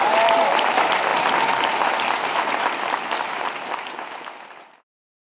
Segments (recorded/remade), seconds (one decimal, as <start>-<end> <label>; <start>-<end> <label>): 0.0-5.3 recorded